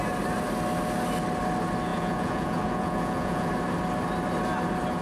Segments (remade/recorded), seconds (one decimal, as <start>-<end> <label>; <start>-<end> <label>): 0.0-1.9 recorded; 1.9-3.5 remade; 3.5-5.0 recorded